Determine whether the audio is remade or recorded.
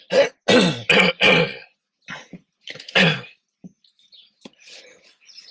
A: recorded